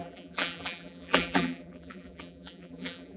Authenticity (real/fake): fake